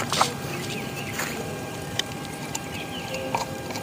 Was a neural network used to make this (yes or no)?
yes